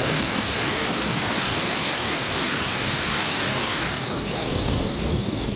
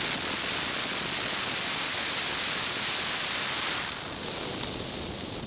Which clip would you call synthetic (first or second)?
first